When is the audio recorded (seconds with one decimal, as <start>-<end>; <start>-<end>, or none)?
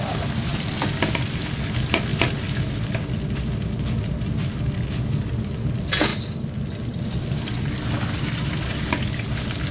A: 0.0-0.5; 1.1-9.7